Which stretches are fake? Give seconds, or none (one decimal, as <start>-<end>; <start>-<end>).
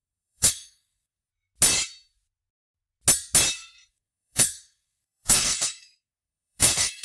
0.0-1.3; 3.9-7.0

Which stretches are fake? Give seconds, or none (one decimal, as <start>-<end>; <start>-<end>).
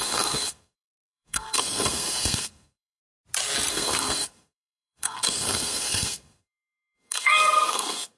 0.0-3.0; 3.7-8.2